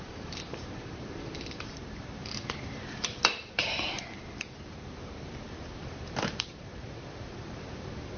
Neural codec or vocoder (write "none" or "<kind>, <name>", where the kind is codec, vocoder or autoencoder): vocoder, BigVGAN v2